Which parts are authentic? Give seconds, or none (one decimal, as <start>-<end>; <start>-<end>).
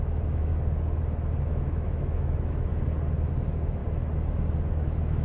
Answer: 0.5-1.4; 2.7-3.3; 3.8-4.7